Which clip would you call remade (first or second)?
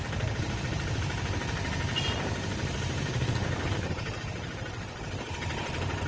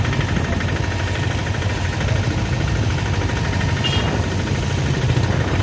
first